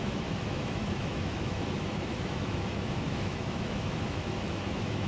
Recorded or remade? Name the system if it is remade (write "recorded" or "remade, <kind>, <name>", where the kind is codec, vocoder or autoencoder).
remade, autoencoder, DAC-VAE